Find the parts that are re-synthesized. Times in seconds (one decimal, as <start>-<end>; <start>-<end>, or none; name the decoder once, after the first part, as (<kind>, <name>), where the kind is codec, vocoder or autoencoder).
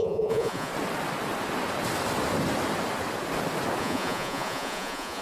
0.0-0.7 (vocoder, Vocos); 3.8-5.2